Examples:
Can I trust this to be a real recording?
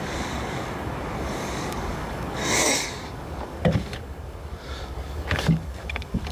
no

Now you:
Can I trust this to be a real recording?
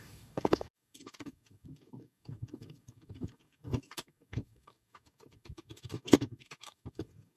no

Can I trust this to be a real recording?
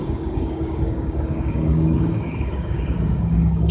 no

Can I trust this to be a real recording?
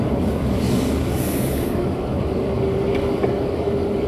no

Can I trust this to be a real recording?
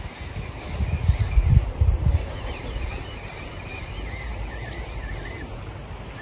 yes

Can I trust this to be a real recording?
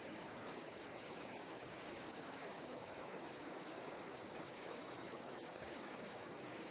no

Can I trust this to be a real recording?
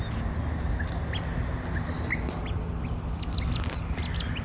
yes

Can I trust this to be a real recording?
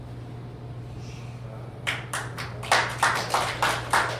yes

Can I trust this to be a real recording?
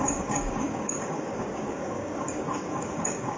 no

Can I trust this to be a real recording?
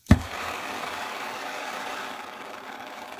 no